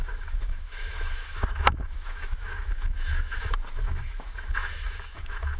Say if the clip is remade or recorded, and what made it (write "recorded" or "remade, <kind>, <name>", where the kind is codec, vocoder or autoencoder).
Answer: remade, autoencoder, DAC-VAE